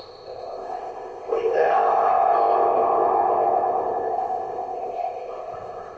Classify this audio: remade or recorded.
remade